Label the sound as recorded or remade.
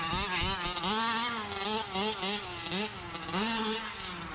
recorded